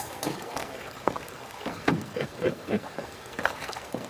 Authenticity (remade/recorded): remade